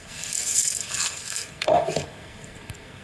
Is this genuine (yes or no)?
no